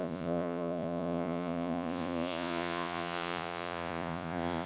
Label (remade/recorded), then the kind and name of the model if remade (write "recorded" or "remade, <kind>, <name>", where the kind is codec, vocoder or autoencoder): remade, vocoder, Vocos